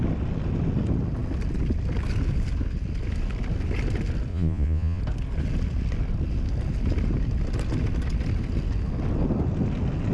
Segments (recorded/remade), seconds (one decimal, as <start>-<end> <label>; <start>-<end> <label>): 0.0-4.3 recorded; 4.3-5.0 remade; 5.0-10.1 recorded